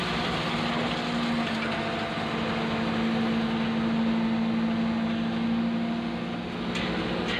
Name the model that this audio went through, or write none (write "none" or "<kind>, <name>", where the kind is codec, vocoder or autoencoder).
none